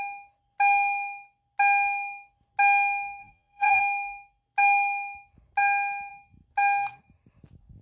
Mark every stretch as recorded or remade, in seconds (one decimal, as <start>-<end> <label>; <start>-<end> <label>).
0.0-3.2 recorded; 3.2-3.8 remade; 3.8-7.8 recorded